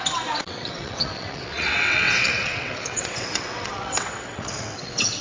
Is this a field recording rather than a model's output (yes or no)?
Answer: no